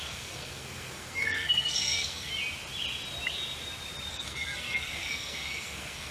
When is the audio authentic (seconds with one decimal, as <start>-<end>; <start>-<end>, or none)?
2.3-4.1